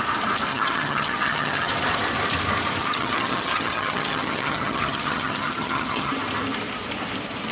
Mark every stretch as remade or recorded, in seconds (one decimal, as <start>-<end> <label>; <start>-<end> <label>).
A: 0.0-0.5 recorded; 0.5-1.7 remade; 1.7-2.8 recorded; 2.8-6.1 remade; 6.1-7.5 recorded